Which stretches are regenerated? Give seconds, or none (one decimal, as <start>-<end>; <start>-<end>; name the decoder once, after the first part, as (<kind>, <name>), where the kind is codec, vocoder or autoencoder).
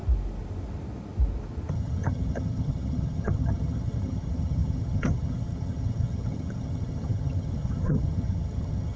1.7-9.0 (vocoder, HiFi-GAN)